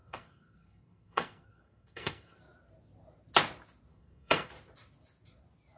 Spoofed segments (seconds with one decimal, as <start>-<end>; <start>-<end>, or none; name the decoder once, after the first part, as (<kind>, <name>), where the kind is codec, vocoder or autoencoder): 0.0-2.4 (codec, SNAC); 3.9-4.5